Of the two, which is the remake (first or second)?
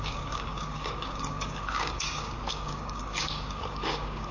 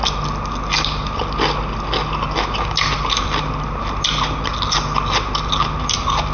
first